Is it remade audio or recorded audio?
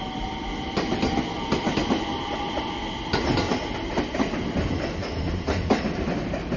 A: recorded